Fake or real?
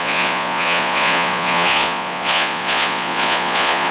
fake